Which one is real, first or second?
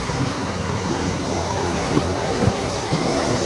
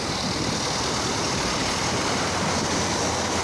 second